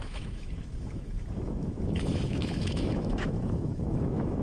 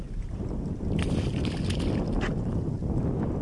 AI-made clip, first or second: first